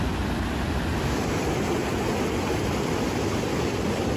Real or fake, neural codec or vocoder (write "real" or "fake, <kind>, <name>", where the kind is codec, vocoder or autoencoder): real